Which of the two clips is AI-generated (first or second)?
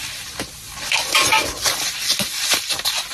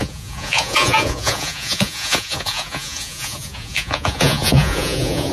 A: second